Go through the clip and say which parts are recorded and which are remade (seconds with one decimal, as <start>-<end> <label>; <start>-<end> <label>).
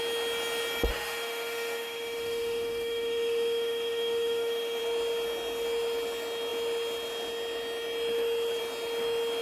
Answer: 0.0-0.9 recorded; 0.9-4.8 remade; 4.8-9.4 recorded